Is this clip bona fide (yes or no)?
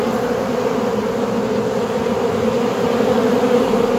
yes